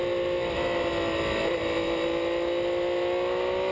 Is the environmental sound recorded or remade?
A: recorded